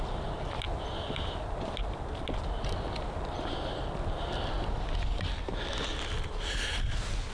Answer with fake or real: real